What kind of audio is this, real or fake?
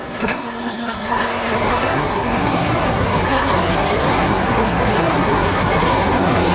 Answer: fake